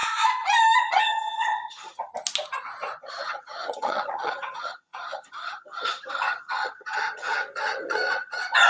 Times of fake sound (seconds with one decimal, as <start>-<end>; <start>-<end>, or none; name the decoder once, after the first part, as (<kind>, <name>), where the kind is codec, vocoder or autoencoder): 0.8-2.1 (vocoder, HiFi-GAN); 3.0-8.7